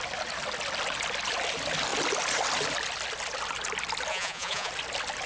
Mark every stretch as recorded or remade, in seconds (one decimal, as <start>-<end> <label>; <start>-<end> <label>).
0.0-4.1 recorded; 4.1-4.7 remade; 4.7-5.3 recorded